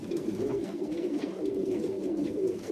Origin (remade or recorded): remade